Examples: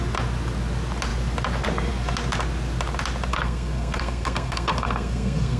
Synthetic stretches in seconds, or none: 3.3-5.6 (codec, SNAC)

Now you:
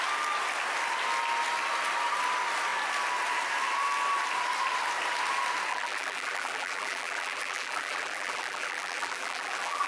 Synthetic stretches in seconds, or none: 5.7-9.9 (vocoder, BigVGAN v2)

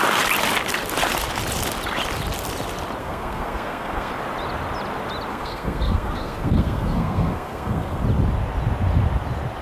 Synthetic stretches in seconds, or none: 3.0-4.1 (codec, SNAC); 5.3-8.0